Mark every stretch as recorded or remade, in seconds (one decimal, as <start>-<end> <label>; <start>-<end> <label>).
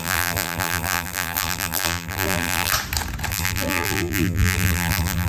0.0-2.7 remade; 2.7-3.3 recorded; 3.3-5.3 remade